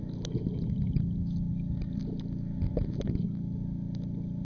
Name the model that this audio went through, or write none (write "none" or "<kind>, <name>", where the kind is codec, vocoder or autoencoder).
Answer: none